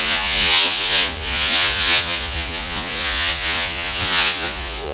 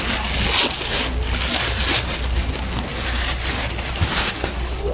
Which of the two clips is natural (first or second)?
second